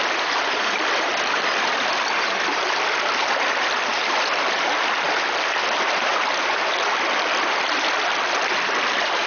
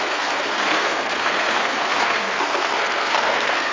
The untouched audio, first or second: first